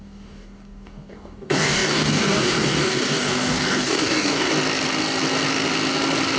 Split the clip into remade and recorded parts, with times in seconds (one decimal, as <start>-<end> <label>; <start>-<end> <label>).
0.0-4.5 remade; 4.5-6.4 recorded